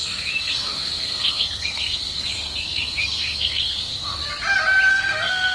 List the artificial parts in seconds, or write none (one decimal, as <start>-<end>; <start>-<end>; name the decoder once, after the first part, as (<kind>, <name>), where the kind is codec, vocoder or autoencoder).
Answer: 0.0-4.2 (codec, SNAC); 4.9-5.5